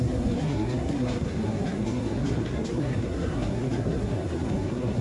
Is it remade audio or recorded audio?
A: remade